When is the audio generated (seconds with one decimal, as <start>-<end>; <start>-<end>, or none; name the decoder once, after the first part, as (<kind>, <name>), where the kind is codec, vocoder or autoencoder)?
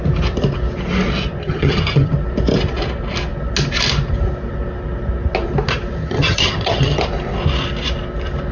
1.4-2.1 (vocoder, HiFi-GAN); 6.0-7.0